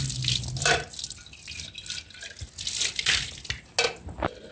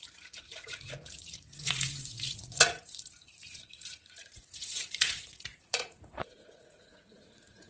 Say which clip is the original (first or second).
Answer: first